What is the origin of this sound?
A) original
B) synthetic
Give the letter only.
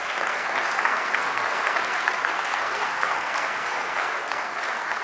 B